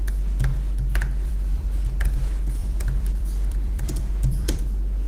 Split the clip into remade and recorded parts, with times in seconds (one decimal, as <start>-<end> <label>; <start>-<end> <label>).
0.0-2.6 recorded; 2.6-4.6 remade; 4.6-5.1 recorded